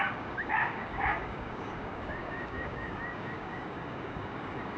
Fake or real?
fake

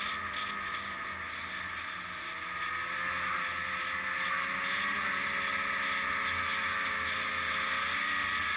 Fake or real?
real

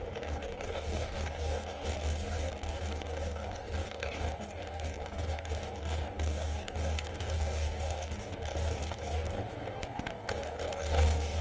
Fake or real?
fake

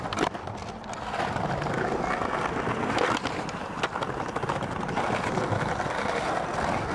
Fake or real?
real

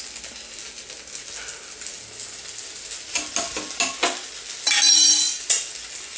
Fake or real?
real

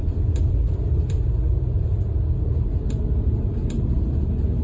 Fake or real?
real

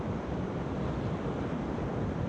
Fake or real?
real